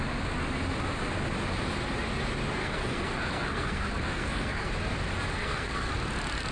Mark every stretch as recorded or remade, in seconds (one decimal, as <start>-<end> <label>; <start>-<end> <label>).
0.0-2.6 recorded; 2.6-4.7 remade; 4.7-5.3 recorded; 5.3-5.9 remade; 5.9-6.5 recorded